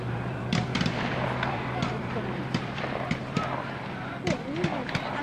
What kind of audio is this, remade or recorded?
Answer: remade